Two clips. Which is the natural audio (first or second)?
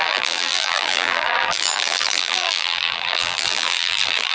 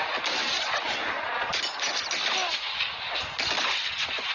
second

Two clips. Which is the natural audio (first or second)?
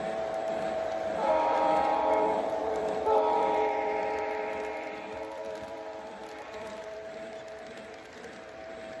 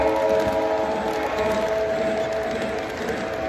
second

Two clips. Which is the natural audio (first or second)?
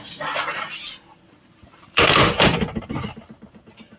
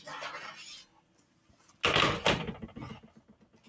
second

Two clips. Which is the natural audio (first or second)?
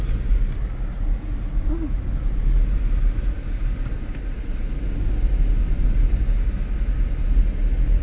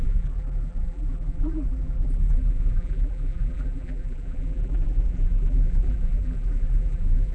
first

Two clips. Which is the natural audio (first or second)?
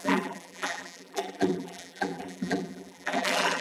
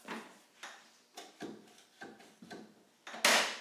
second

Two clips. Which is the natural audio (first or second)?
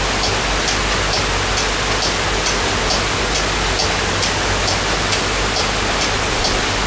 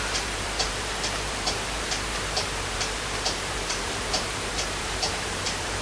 first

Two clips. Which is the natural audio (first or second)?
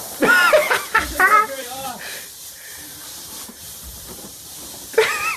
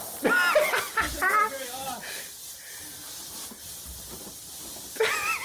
second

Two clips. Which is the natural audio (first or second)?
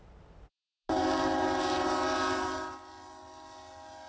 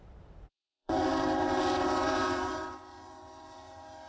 first